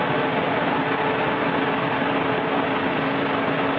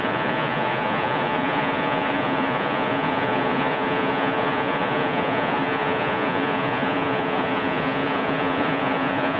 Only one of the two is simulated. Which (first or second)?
second